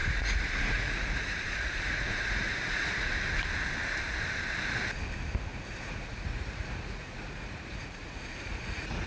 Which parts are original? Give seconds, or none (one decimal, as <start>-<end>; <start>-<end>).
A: 3.1-5.5